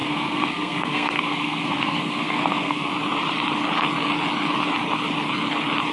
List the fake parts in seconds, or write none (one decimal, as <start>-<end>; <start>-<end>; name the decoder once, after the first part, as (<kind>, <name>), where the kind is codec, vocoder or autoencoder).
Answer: 0.0-2.9 (codec, SNAC)